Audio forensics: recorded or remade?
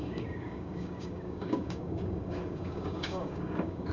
remade